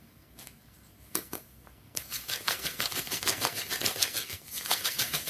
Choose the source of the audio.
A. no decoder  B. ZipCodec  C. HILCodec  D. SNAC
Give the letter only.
D